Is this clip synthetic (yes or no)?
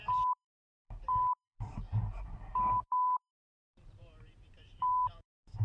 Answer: yes